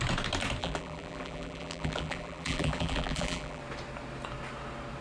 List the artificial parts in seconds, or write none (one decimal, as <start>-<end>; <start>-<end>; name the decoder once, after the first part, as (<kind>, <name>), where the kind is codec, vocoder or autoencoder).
0.6-3.6 (vocoder, BigVGAN v2)